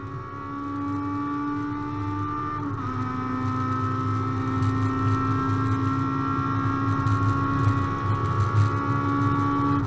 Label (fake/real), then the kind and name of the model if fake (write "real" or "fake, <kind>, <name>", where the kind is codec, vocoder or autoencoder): real